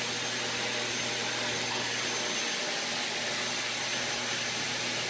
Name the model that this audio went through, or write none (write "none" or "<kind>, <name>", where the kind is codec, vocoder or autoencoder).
none